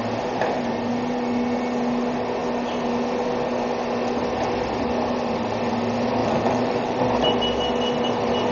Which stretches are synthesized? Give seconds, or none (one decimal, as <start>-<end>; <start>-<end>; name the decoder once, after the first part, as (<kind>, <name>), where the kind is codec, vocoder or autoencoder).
6.2-7.0 (vocoder, BigVGAN v2)